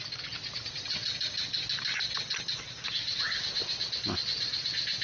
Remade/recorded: recorded